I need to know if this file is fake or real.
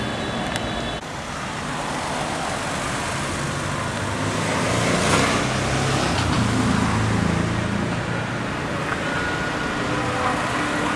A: real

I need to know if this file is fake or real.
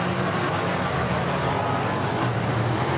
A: real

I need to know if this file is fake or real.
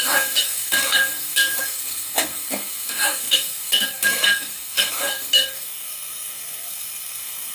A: fake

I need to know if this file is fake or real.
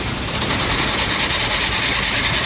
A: real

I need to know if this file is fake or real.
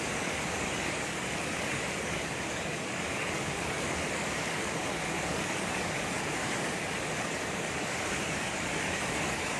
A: fake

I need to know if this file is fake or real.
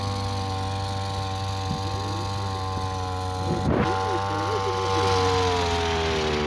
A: real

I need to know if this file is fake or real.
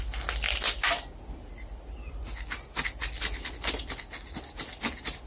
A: real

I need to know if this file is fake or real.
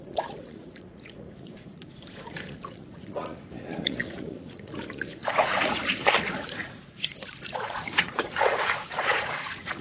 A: fake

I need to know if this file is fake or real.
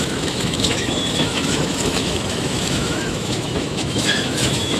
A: fake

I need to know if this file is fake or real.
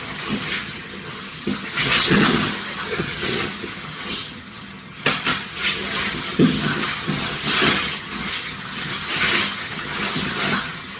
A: fake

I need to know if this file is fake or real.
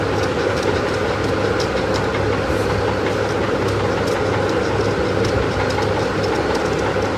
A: real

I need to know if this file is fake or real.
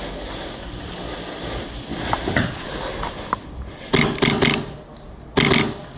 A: real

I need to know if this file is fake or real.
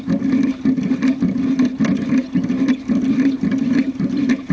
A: real